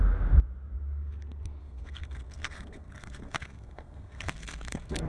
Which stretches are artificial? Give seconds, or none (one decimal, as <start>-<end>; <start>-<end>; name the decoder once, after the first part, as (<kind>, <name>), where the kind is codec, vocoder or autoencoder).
1.6-5.1 (codec, SNAC)